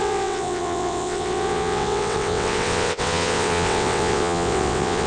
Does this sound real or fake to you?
fake